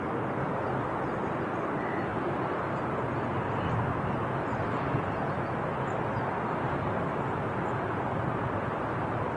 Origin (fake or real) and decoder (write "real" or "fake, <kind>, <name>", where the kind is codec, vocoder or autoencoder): real